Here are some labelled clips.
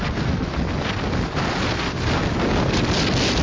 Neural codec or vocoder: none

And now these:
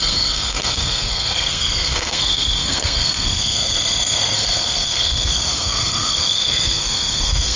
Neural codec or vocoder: codec, SNAC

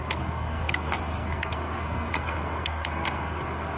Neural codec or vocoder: codec, SNAC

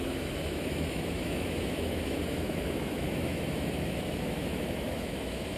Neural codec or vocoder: autoencoder, DAC-VAE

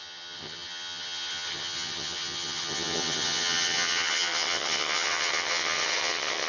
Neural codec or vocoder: vocoder, HiFi-GAN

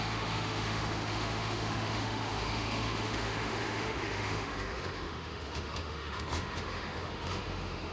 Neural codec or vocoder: autoencoder, DAC-VAE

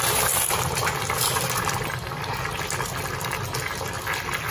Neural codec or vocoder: none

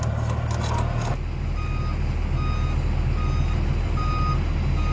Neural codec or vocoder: none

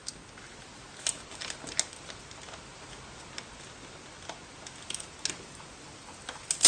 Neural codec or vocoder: none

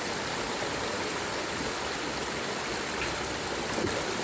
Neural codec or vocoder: none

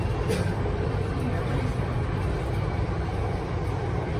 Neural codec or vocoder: none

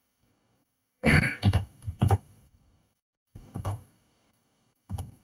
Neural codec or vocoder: codec, DAC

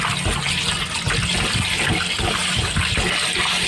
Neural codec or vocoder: none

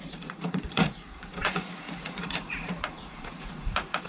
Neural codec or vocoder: vocoder, Vocos